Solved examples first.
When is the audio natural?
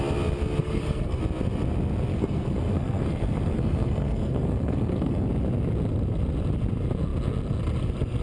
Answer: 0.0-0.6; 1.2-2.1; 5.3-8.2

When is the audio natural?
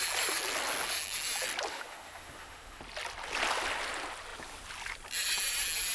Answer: 0.0-1.7; 2.8-5.9